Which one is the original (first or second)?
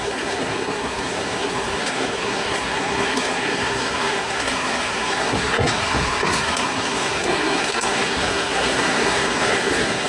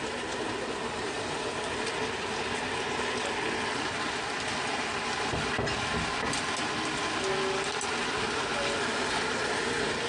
second